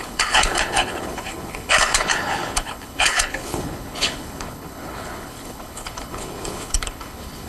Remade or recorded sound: remade